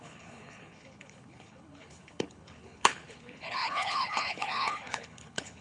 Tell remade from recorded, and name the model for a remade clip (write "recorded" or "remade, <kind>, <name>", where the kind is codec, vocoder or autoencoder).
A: remade, codec, HILCodec